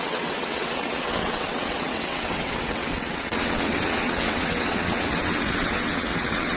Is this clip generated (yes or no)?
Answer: yes